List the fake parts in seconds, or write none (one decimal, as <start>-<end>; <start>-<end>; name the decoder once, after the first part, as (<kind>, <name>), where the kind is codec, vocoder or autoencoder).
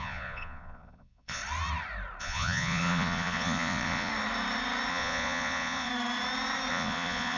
0.0-1.4 (vocoder, Vocos); 2.2-4.1; 4.9-5.9; 6.7-7.4